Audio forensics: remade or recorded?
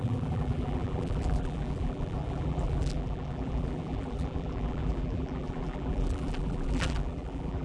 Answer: remade